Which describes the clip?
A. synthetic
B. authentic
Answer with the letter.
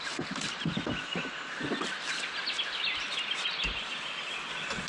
B